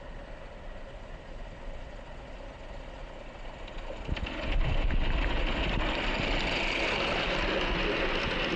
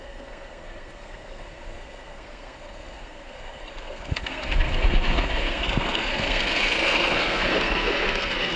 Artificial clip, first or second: second